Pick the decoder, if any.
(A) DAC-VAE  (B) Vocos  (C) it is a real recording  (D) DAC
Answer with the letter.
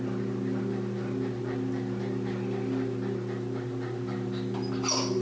C